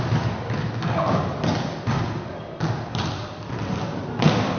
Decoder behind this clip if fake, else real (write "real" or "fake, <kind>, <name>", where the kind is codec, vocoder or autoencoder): real